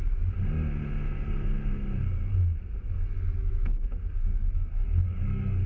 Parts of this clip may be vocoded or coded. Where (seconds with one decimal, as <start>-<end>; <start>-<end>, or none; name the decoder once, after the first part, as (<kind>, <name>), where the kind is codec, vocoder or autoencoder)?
2.0-5.7 (codec, SNAC)